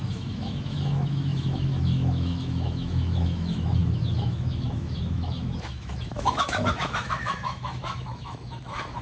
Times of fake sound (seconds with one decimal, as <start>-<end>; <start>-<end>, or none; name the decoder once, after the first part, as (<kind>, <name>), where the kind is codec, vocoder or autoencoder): 0.0-9.0 (autoencoder, DAC-VAE)